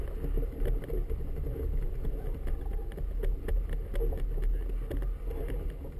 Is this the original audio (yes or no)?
yes